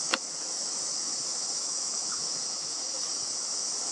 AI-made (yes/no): yes